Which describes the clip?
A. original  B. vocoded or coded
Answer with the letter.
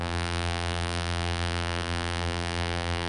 B